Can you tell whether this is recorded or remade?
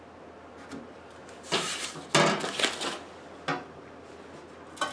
recorded